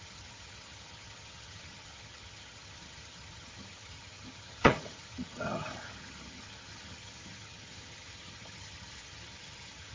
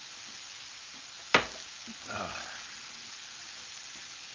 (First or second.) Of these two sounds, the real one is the second